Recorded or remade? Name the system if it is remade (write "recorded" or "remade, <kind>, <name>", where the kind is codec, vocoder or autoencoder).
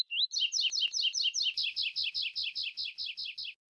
recorded